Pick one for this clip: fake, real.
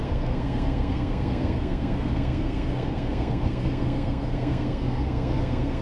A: fake